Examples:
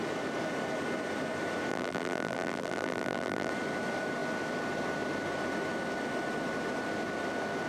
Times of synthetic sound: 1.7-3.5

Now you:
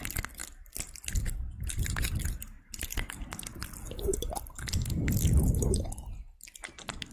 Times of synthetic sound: none

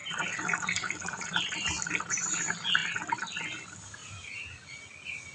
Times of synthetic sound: 0.0-1.3

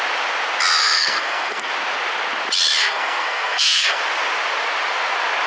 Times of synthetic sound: 0.8-1.7; 2.8-4.0

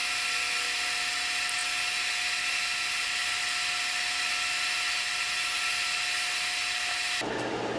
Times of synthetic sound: none

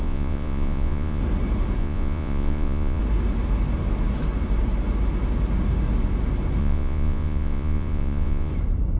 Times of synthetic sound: 0.0-1.2; 1.8-3.0; 6.6-8.5

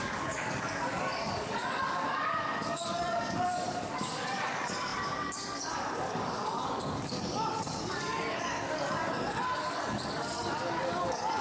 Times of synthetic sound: 0.0-11.4

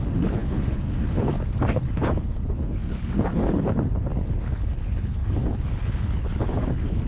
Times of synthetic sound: 0.0-7.1